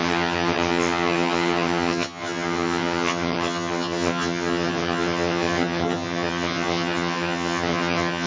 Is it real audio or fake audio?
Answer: fake